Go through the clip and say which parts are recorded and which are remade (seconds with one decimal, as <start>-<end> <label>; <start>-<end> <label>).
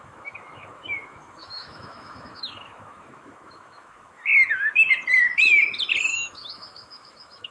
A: 0.0-4.3 remade; 4.3-6.1 recorded; 6.1-7.5 remade